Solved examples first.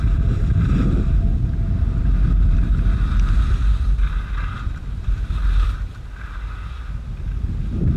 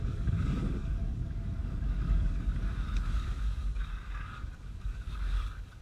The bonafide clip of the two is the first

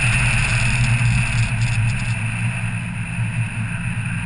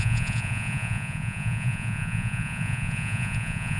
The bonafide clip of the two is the first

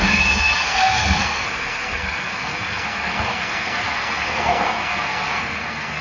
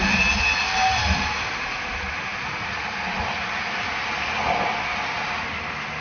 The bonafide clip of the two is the second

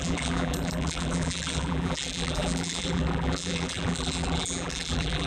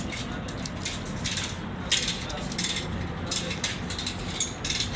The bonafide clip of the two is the second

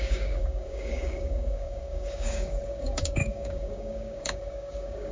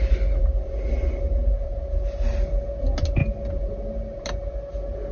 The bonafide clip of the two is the second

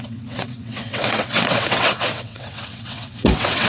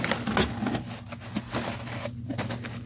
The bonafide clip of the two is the second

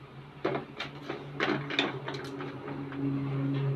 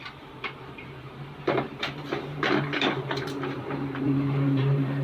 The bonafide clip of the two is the first